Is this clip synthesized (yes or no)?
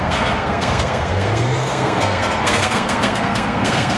yes